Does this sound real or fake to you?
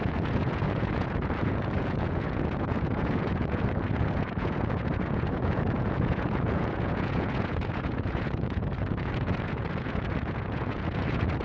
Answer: fake